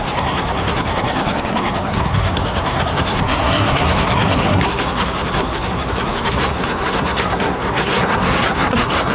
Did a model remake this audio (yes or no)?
yes